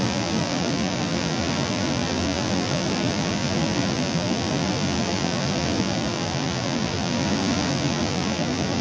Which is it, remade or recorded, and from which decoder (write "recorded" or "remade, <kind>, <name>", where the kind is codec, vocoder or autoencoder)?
remade, vocoder, BigVGAN v2